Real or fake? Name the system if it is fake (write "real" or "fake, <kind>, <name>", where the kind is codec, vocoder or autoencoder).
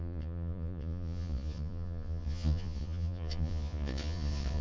fake, vocoder, Vocos